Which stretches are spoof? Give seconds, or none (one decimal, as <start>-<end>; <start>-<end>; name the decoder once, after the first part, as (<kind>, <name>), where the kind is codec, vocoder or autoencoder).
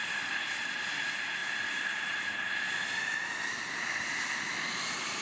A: 1.4-4.5 (vocoder, BigVGAN v2)